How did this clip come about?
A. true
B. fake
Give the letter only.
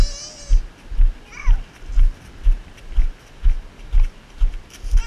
A